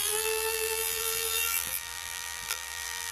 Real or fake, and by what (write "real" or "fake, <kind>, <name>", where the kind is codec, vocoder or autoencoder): fake, vocoder, BigVGAN v2